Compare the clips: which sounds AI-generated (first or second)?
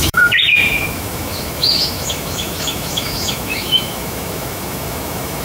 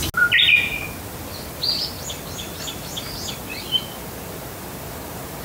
first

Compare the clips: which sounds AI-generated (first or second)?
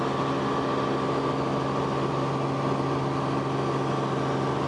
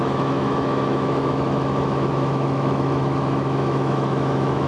second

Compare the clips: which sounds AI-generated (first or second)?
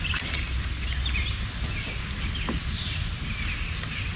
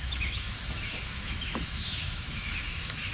second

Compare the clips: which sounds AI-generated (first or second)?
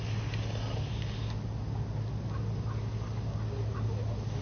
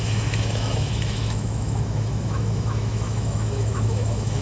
second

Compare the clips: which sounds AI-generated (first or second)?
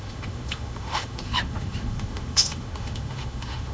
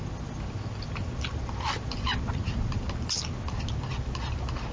first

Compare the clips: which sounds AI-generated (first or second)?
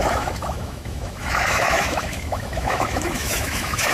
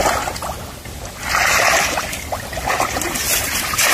first